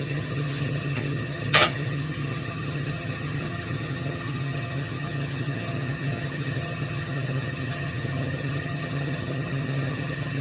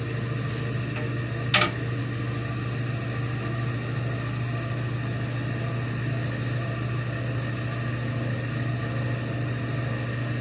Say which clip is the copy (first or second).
first